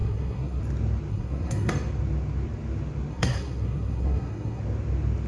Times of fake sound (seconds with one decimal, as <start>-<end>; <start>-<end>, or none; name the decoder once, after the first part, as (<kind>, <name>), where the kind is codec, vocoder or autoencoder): 0.0-0.6 (codec, SNAC); 1.1-1.7; 3.1-4.6